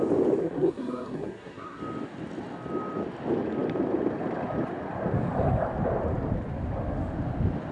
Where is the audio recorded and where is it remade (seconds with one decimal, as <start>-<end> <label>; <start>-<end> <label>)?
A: 0.0-0.4 recorded; 0.4-1.8 remade; 1.8-7.7 recorded